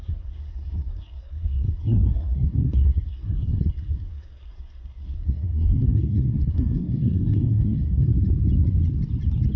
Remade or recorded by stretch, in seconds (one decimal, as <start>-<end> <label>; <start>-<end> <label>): 0.0-8.1 remade; 8.1-9.6 recorded